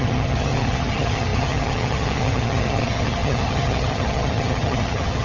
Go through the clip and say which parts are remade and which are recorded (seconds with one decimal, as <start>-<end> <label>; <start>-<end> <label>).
0.0-5.2 remade